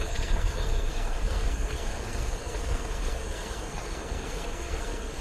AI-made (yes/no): yes